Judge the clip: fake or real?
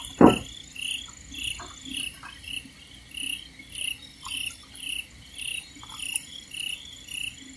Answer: real